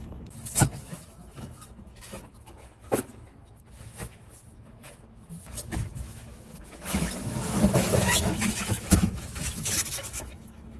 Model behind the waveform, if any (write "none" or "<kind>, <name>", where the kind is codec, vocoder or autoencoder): autoencoder, DAC-VAE